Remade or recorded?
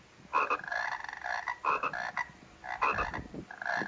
recorded